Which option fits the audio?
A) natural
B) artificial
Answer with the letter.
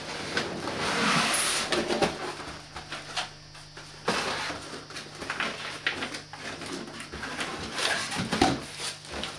A